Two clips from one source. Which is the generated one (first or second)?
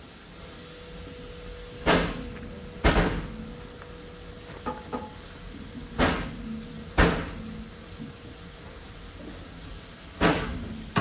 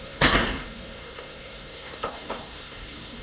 second